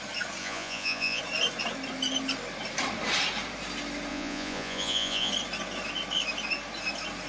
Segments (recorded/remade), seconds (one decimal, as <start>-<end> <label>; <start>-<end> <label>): 0.0-0.4 recorded; 0.4-1.2 remade; 1.2-4.1 recorded; 4.1-5.3 remade; 5.3-7.3 recorded